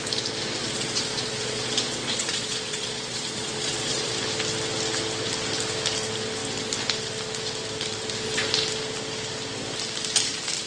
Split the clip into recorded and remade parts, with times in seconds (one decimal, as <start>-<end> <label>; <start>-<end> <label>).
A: 0.0-0.6 recorded; 0.6-4.1 remade; 4.1-10.7 recorded